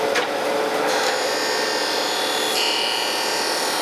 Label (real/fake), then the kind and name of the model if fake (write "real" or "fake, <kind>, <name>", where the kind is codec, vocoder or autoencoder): real